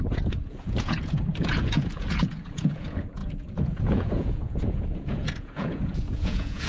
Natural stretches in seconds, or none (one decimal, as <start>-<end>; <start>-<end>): none